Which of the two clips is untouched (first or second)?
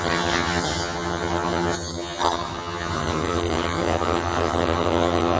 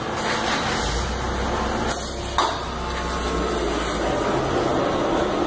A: second